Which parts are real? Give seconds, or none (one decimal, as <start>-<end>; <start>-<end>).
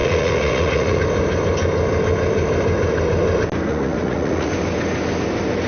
1.0-3.7; 4.5-5.7